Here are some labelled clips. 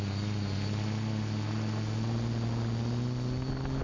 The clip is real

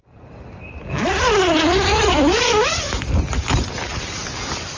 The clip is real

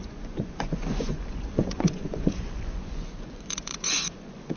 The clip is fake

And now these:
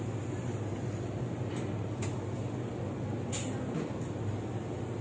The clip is real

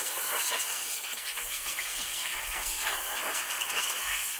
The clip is fake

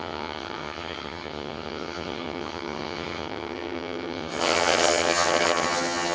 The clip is fake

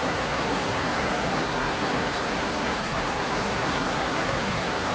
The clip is fake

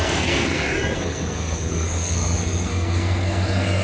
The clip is fake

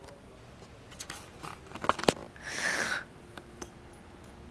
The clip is real